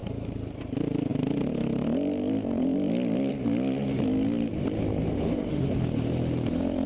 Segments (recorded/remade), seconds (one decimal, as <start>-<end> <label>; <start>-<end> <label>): 0.0-5.1 recorded; 5.1-5.7 remade; 5.7-6.9 recorded